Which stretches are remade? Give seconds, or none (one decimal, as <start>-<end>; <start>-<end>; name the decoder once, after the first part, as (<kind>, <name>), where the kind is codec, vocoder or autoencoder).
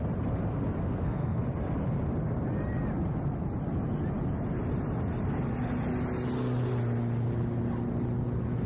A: 0.8-1.4 (codec, SNAC)